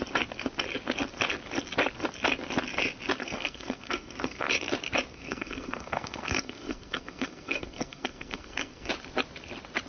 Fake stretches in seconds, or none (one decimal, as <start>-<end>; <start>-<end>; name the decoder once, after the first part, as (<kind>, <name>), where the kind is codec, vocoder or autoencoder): 3.2-4.5 (codec, SNAC); 5.1-8.9